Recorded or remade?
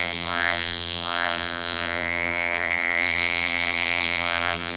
remade